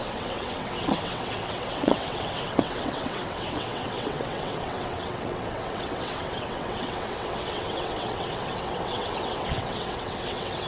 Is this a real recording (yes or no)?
no